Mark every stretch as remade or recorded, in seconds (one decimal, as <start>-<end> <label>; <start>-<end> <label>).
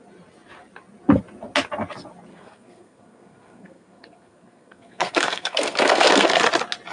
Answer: 0.0-2.3 recorded; 2.3-6.4 remade; 6.4-6.9 recorded